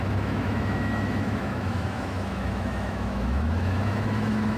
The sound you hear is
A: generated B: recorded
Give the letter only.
A